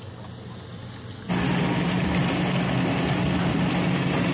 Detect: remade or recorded recorded